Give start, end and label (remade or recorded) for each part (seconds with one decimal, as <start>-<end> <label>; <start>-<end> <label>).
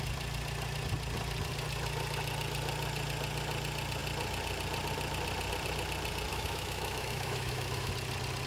0.0-6.3 recorded; 6.3-7.9 remade; 7.9-8.5 recorded